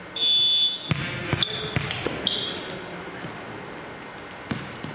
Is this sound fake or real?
real